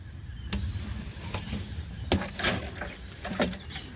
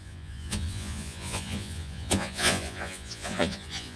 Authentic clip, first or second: first